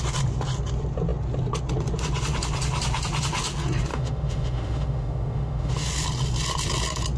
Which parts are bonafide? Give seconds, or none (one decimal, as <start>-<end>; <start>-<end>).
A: 0.0-3.9; 5.7-7.2